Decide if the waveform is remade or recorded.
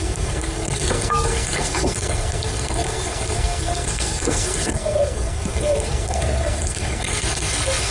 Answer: remade